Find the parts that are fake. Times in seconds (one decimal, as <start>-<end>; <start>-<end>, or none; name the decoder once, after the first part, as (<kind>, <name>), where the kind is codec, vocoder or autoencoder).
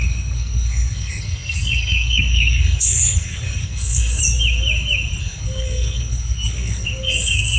0.0-4.2 (codec, SNAC); 5.2-7.6